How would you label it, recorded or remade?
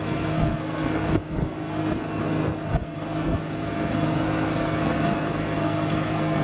remade